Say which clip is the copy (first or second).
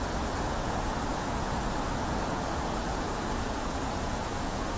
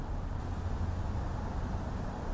first